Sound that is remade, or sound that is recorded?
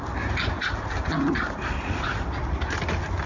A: recorded